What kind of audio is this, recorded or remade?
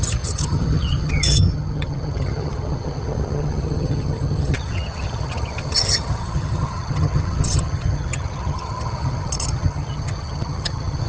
remade